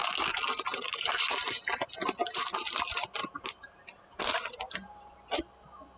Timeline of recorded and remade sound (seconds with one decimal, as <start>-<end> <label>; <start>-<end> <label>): 0.0-3.2 recorded; 3.2-5.4 remade; 5.4-6.0 recorded